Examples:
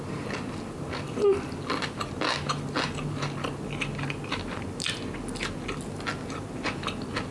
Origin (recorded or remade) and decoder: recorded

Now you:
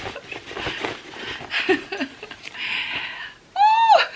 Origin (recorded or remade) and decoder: recorded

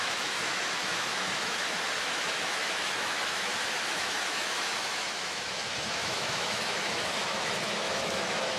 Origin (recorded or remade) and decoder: remade, autoencoder, DAC-VAE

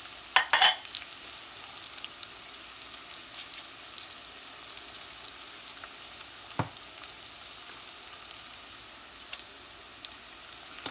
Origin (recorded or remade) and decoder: recorded